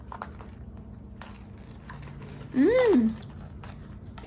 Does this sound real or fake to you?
real